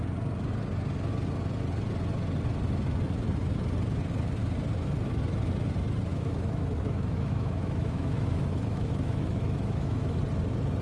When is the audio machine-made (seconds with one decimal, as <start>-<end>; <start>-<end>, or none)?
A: 6.1-10.2